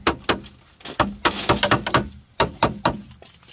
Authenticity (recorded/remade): recorded